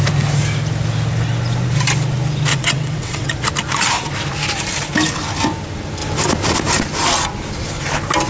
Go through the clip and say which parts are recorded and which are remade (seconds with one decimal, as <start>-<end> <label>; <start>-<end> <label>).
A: 0.0-2.5 recorded; 2.5-3.3 remade; 3.3-8.3 recorded